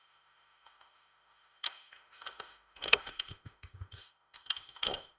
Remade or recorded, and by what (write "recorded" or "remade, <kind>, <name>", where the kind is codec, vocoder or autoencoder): remade, autoencoder, DAC-VAE